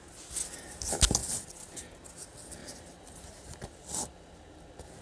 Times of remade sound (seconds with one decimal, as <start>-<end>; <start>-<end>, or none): 1.2-1.9; 2.6-4.3